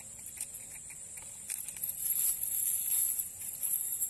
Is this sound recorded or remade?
recorded